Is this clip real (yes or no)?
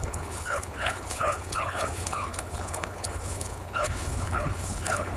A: no